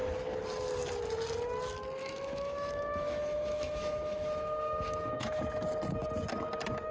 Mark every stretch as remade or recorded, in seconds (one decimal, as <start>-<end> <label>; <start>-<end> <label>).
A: 0.0-2.0 recorded; 2.0-5.4 remade; 5.4-6.9 recorded